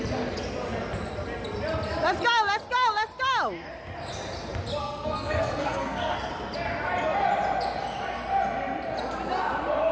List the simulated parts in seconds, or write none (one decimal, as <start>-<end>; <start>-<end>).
4.8-6.3